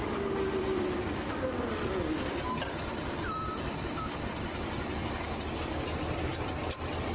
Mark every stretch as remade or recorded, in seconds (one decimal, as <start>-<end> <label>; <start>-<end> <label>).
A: 0.0-3.8 remade; 3.8-7.1 recorded